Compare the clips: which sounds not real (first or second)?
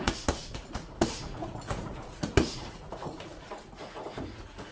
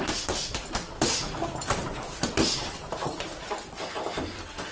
first